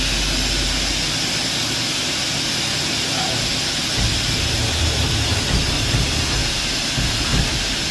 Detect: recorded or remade recorded